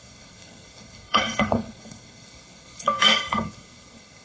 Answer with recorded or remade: remade